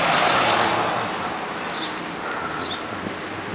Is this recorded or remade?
recorded